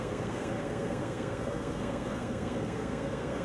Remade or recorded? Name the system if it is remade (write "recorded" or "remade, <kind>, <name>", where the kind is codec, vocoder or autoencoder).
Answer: remade, codec, SNAC